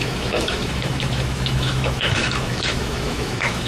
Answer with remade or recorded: remade